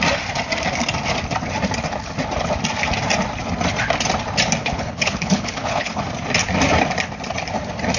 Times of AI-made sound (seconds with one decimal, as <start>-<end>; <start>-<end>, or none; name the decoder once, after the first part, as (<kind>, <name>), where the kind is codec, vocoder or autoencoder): 4.6-6.0 (codec, HILCodec)